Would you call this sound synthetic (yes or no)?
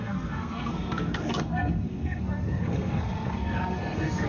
yes